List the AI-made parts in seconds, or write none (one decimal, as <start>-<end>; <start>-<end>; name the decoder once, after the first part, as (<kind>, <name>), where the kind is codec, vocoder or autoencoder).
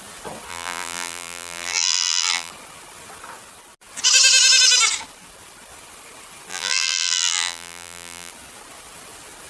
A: 0.5-2.5 (vocoder, BigVGAN v2); 6.5-8.3